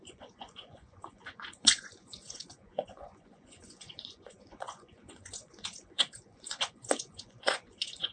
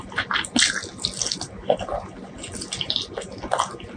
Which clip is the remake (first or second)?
first